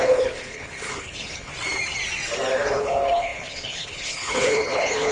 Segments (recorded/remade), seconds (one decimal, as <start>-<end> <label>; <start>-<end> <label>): 0.0-1.5 remade; 1.5-2.6 recorded; 2.6-5.1 remade